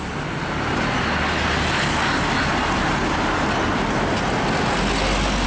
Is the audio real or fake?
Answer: real